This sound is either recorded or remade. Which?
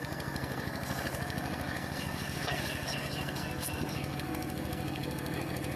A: remade